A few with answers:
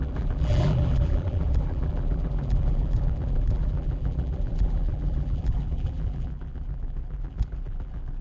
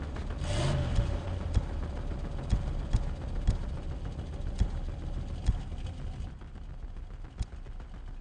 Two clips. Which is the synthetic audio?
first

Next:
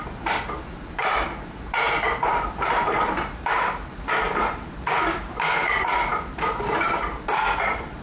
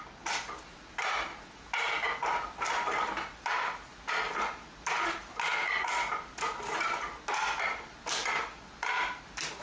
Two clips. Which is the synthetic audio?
first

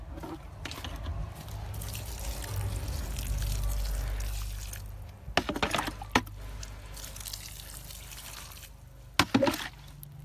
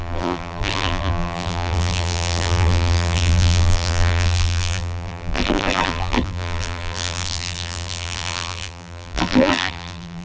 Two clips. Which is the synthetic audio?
second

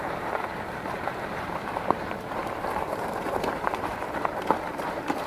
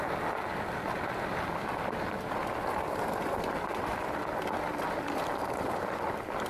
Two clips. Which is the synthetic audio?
first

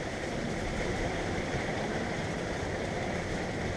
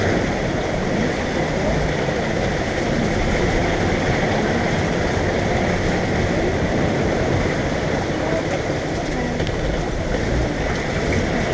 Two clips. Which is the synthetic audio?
first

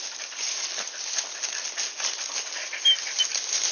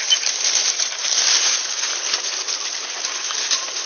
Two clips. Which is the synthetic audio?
second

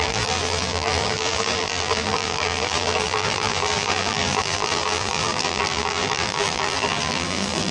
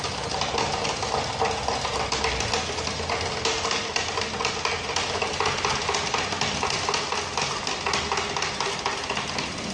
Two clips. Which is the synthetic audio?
first